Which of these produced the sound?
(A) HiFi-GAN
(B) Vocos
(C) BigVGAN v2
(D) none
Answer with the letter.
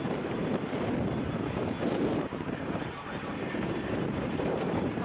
C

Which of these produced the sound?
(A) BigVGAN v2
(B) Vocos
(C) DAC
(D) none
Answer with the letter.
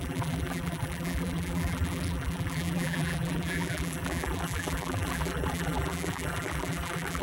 A